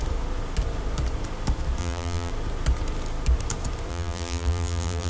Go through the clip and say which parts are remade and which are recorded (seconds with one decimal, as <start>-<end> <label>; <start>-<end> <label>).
0.0-1.8 recorded; 1.8-2.3 remade; 2.3-3.9 recorded; 3.9-5.1 remade